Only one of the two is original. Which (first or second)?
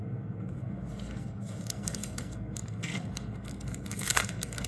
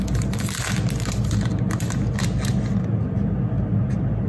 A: second